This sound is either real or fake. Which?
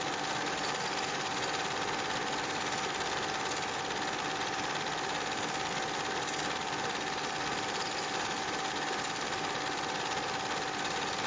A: real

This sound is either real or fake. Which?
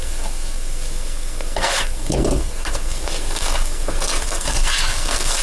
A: fake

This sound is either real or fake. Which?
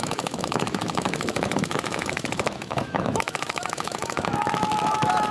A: fake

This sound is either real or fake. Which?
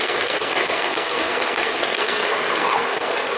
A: fake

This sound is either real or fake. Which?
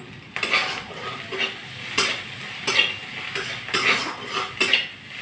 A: real